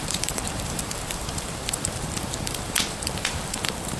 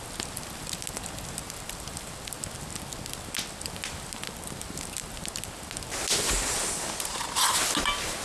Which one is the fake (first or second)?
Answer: first